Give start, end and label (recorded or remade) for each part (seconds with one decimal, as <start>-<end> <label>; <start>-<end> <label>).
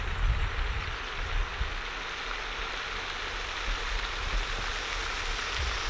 0.0-5.9 recorded